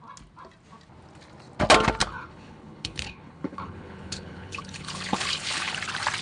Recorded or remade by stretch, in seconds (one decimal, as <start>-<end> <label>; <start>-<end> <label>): 0.0-2.0 recorded; 2.0-5.7 remade; 5.7-6.2 recorded

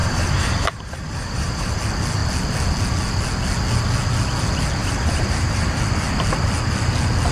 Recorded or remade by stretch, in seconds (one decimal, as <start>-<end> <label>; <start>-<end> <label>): 0.0-1.8 remade; 1.8-4.8 recorded; 4.8-5.8 remade; 5.8-7.3 recorded

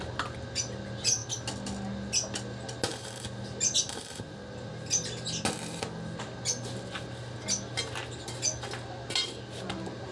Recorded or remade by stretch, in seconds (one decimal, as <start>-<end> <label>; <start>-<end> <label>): 0.0-10.1 recorded

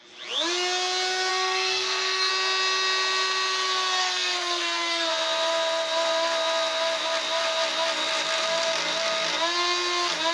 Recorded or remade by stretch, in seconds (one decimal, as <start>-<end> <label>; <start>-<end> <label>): 0.0-1.3 recorded; 1.3-2.3 remade; 2.3-4.0 recorded; 4.0-5.1 remade; 5.1-10.3 recorded